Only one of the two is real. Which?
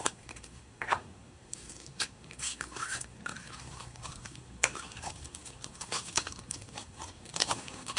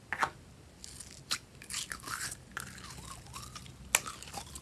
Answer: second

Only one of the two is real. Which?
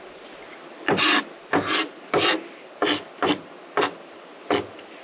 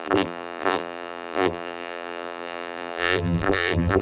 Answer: first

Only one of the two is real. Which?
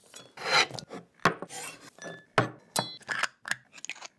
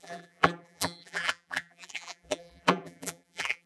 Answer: first